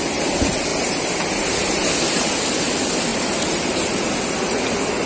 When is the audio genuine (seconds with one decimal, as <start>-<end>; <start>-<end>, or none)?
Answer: 0.0-0.7; 2.3-3.1; 4.3-5.1